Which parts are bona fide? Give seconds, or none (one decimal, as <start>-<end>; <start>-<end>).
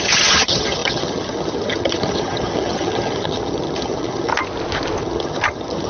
4.3-5.0